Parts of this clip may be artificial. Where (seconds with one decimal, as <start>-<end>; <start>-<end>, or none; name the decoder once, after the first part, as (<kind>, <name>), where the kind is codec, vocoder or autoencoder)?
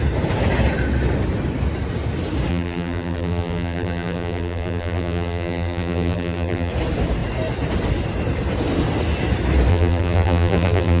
2.5-6.7 (vocoder, BigVGAN v2); 9.7-11.0